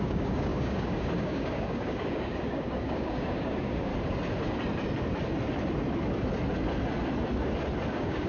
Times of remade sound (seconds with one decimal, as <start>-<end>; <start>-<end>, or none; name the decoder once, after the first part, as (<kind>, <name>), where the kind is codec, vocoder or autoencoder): 0.0-3.9 (codec, DAC); 7.9-8.3